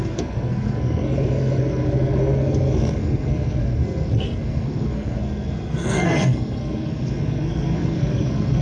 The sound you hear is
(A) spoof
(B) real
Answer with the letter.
A